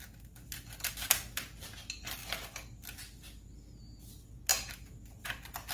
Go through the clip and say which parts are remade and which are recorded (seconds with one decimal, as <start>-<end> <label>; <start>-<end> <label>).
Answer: 0.0-5.7 recorded

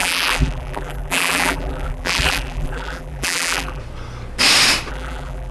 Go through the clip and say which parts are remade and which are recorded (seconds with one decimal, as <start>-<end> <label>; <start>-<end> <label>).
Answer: 0.0-3.8 remade; 3.8-4.9 recorded; 4.9-5.5 remade